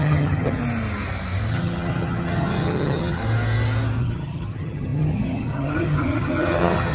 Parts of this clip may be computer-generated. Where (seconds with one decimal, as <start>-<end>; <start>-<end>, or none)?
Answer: 0.0-0.6; 1.5-3.2; 4.0-6.9